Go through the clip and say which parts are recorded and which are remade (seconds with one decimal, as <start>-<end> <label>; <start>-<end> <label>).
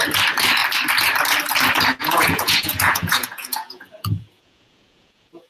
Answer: 0.0-2.0 recorded; 2.0-5.5 remade